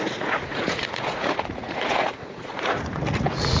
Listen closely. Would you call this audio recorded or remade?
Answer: remade